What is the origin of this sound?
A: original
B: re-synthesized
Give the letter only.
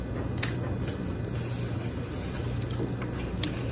A